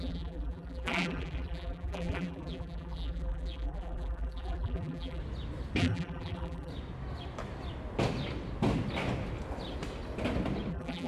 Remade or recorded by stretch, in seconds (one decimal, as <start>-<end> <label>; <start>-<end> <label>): 0.0-5.2 remade; 5.2-5.8 recorded; 5.8-6.7 remade; 6.7-10.7 recorded; 10.7-11.1 remade